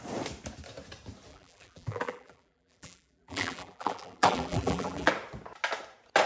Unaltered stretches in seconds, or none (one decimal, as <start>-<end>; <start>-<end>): 0.0-1.3; 5.1-6.3